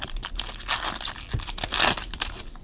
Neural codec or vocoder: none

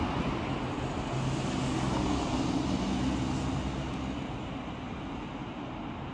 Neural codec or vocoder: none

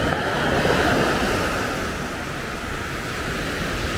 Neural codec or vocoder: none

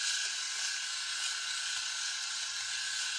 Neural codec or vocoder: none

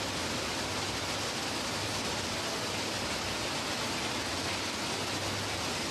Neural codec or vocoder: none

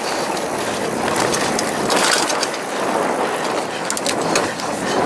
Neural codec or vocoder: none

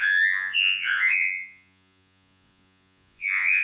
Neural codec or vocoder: vocoder, Vocos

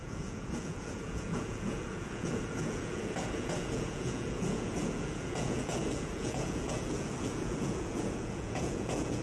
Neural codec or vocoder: vocoder, Vocos